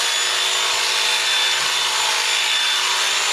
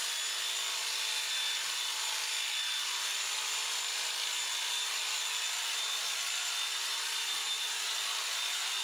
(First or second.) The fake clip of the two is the second